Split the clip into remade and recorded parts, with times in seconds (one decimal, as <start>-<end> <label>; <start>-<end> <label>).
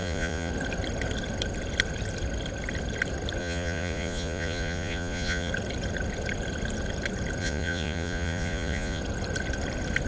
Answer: 0.0-0.5 remade; 0.5-3.4 recorded; 3.4-5.5 remade; 5.5-7.4 recorded; 7.4-9.0 remade; 9.0-10.1 recorded